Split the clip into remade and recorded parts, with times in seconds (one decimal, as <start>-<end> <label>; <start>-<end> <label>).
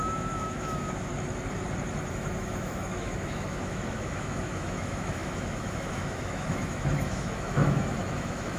0.0-1.1 remade; 1.1-2.1 recorded; 2.1-8.6 remade